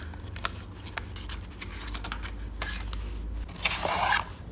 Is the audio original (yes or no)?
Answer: yes